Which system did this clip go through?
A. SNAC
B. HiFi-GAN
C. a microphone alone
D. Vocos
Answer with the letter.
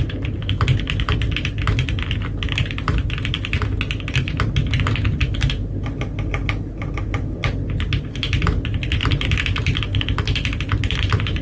C